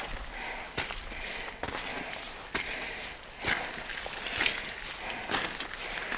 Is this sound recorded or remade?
recorded